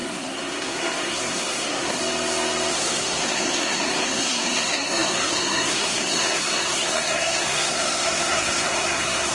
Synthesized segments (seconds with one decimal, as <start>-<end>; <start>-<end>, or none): 0.0-2.0; 2.7-9.3

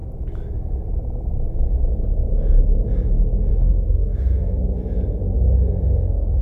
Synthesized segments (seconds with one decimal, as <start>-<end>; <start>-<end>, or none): 3.5-4.8